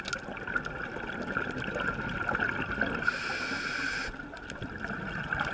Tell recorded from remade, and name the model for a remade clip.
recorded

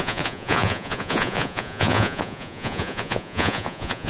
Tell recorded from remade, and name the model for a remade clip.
remade, vocoder, Vocos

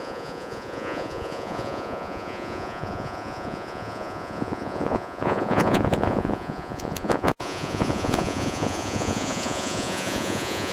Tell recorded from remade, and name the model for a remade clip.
remade, vocoder, Vocos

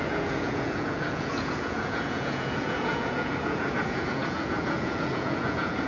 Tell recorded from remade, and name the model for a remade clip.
remade, vocoder, Vocos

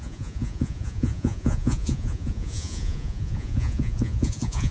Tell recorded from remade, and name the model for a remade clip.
remade, vocoder, Vocos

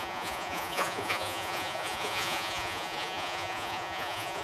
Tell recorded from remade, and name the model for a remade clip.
remade, vocoder, Vocos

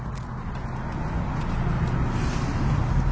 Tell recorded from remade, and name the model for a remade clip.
recorded